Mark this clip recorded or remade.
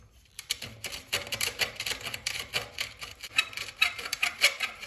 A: remade